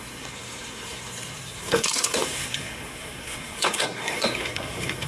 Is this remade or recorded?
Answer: remade